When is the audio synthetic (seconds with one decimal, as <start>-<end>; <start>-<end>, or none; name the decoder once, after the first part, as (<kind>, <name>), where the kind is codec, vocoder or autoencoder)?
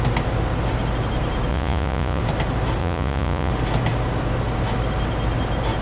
1.5-2.2 (vocoder, Vocos); 2.8-3.5